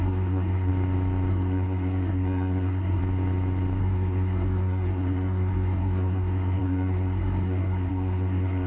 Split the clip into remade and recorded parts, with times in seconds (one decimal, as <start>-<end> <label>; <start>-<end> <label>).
0.0-0.7 remade; 0.7-1.3 recorded; 1.3-3.0 remade; 3.0-3.8 recorded; 3.8-8.7 remade